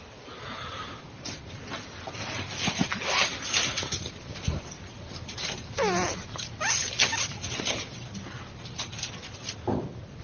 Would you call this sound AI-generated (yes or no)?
no